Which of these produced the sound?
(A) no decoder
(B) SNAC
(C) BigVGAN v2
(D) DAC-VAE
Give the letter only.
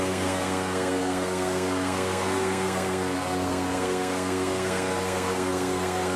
B